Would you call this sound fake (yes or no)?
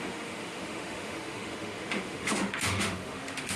yes